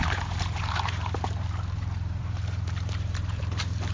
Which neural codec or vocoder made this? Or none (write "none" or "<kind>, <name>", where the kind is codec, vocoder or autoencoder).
vocoder, BigVGAN v2